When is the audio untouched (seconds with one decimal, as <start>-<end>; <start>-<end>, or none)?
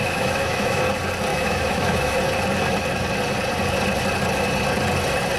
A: 0.8-1.3; 2.2-5.4